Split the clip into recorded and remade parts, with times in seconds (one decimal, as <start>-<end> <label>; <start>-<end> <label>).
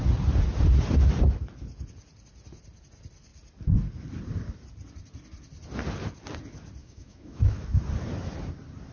0.0-6.8 recorded; 6.8-7.8 remade; 7.8-8.9 recorded